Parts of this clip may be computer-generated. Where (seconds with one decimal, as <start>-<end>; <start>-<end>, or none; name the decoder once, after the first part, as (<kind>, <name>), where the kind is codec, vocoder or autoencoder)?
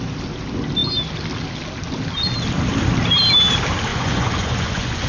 3.9-5.1 (vocoder, Vocos)